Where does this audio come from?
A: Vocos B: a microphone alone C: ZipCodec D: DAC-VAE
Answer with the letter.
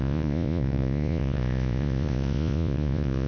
A